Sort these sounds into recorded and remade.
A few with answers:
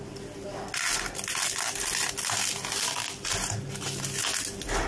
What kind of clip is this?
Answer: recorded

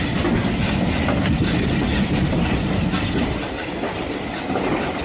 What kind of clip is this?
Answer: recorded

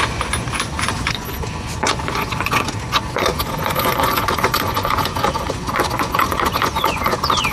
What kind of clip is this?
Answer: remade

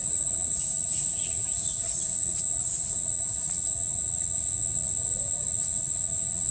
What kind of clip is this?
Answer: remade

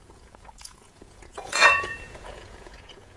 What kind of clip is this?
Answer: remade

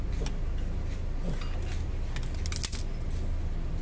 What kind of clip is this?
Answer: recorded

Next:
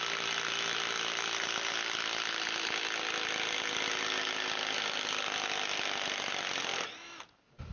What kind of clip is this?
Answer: recorded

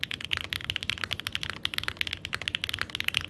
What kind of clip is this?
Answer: recorded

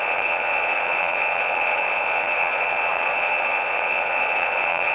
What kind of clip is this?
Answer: remade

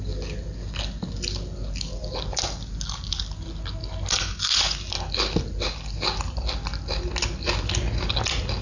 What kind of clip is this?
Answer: recorded